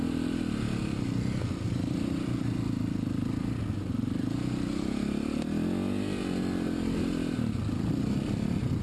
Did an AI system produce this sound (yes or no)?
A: no